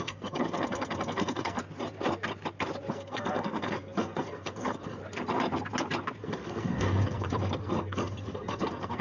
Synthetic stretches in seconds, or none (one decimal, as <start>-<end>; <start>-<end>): 0.0-1.6; 2.9-5.0; 6.2-9.0